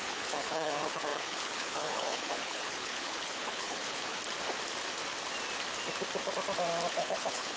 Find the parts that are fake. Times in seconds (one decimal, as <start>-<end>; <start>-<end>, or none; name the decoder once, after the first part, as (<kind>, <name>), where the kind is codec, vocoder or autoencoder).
0.0-4.2 (codec, HILCodec); 6.9-7.6